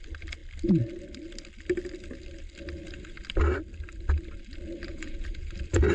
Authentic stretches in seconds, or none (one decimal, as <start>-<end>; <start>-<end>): 0.0-4.9; 5.5-5.9